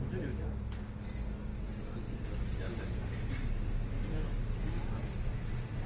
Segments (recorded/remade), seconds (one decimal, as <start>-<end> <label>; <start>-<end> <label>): 0.0-5.9 recorded